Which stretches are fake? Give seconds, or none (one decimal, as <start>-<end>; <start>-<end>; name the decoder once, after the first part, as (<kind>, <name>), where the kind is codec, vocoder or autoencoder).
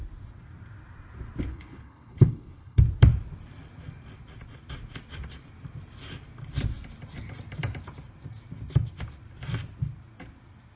1.5-2.8 (codec, HILCodec)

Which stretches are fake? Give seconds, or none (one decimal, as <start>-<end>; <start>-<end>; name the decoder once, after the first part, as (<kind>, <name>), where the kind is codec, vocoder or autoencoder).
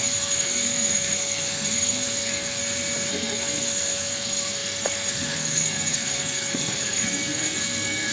0.0-2.6 (codec, SNAC); 3.1-8.1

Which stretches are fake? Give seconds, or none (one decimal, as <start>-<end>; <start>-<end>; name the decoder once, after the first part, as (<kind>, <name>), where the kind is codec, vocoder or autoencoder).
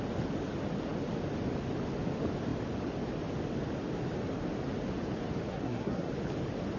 5.5-6.1 (codec, SNAC)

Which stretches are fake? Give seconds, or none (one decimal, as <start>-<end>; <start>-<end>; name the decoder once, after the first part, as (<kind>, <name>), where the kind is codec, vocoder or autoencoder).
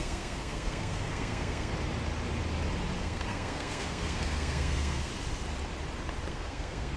0.0-1.7 (codec, SNAC); 3.0-5.1; 6.3-7.0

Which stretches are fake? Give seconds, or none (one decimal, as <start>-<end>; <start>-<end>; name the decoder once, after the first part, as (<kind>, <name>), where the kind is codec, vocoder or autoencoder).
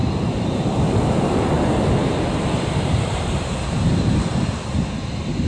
0.0-0.7 (vocoder, BigVGAN v2); 2.0-5.5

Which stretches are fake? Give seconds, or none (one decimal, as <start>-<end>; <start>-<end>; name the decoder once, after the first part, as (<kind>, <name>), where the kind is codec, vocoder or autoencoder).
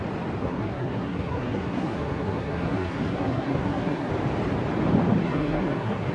0.4-4.1 (codec, SNAC); 5.2-6.1